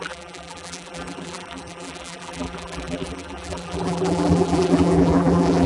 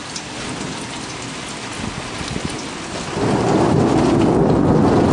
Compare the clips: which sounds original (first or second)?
second